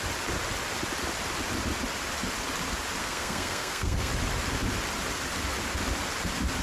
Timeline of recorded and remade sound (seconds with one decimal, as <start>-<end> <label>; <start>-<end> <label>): 0.0-3.0 recorded; 3.0-4.1 remade; 4.1-6.6 recorded